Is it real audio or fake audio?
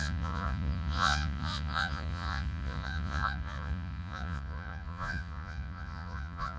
fake